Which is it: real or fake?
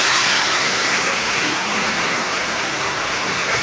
fake